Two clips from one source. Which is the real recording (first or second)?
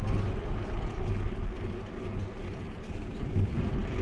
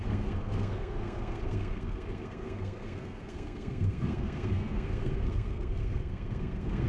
first